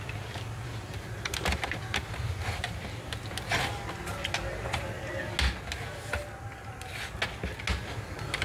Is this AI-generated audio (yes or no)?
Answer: no